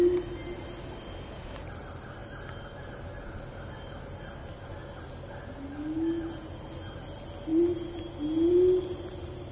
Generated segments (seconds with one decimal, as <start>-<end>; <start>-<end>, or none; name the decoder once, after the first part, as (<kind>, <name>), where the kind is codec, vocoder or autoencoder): 4.4-5.0 (vocoder, BigVGAN v2)